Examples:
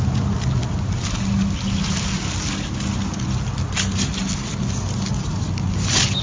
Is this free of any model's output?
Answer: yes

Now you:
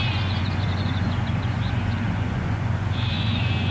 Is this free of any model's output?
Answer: no